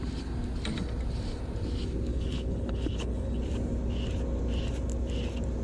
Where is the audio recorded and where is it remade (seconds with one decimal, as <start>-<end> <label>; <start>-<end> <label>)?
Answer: 0.0-2.1 recorded; 2.1-3.4 remade; 3.4-5.6 recorded

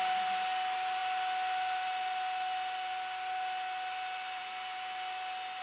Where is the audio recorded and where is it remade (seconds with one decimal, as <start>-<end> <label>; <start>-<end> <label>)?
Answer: 0.0-5.6 recorded

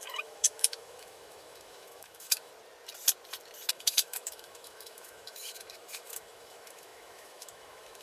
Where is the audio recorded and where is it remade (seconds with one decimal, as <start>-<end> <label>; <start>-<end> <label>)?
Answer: 0.0-2.5 remade; 2.5-3.7 recorded; 3.7-8.0 remade

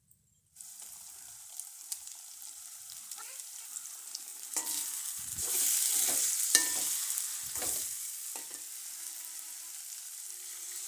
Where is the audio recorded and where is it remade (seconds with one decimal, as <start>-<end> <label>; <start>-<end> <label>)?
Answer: 0.0-8.3 remade; 8.3-9.0 recorded; 9.0-10.9 remade

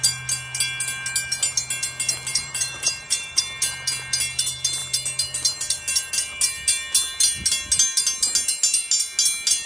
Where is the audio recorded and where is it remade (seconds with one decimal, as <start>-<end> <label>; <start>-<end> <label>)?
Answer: 0.0-2.3 recorded; 2.3-3.4 remade; 3.4-9.7 recorded

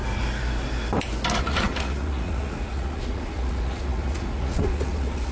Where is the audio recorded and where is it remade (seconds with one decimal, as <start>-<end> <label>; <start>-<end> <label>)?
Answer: 0.0-1.4 recorded; 1.4-5.3 remade

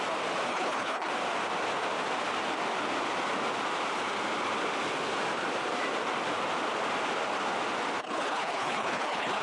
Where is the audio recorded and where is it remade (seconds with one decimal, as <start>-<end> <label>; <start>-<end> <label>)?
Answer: 0.0-0.5 recorded; 0.5-1.1 remade; 1.1-8.0 recorded; 8.0-9.4 remade